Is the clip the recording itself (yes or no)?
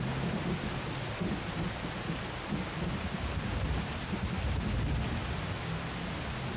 yes